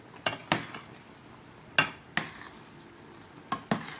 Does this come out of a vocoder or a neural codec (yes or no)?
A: no